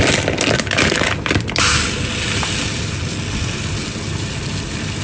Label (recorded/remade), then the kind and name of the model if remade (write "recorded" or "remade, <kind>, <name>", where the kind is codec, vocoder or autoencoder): recorded